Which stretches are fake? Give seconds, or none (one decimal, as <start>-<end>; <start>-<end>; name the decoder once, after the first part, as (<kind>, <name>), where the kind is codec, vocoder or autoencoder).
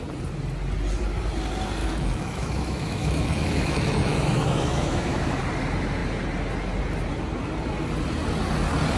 1.8-5.4 (autoencoder, DAC-VAE)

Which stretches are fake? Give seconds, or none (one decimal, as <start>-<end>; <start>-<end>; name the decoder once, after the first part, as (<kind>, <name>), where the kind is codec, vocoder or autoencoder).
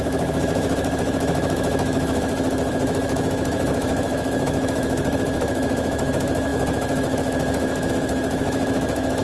0.0-9.2 (autoencoder, DAC-VAE)